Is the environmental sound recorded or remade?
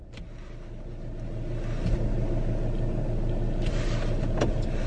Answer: recorded